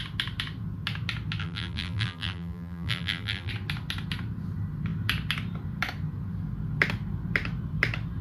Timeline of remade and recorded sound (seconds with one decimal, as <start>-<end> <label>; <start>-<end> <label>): 0.0-1.4 recorded; 1.4-3.5 remade; 3.5-8.2 recorded